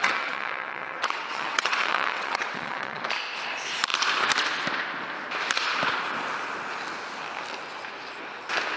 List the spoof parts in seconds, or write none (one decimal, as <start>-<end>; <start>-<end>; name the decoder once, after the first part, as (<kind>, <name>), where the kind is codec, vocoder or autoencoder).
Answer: 0.0-3.0 (vocoder, WaveNeXt)